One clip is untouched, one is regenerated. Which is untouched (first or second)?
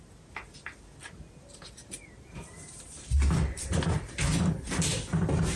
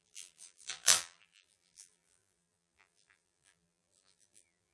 first